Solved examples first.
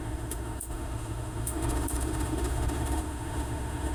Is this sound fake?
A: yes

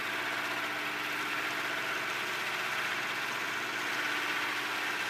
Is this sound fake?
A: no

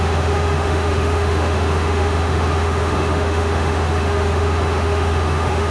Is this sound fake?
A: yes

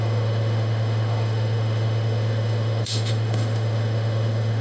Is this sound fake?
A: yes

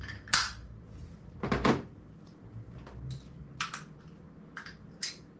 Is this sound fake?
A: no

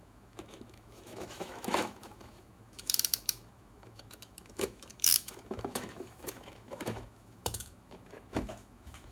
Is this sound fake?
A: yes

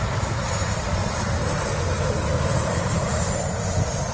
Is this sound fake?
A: no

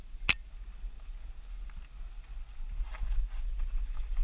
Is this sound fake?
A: no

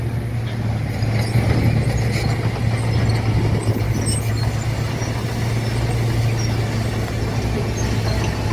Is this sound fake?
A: no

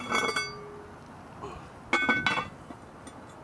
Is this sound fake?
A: no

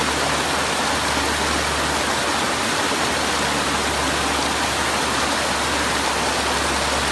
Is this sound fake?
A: no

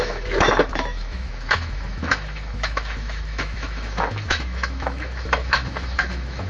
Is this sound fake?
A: yes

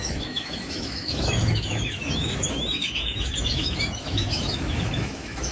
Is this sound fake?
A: yes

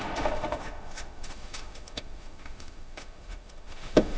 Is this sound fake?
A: yes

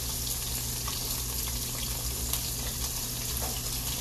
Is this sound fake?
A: no